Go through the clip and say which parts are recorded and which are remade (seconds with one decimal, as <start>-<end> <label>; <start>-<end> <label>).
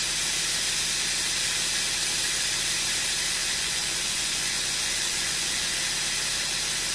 0.0-3.4 recorded; 3.4-5.8 remade; 5.8-6.9 recorded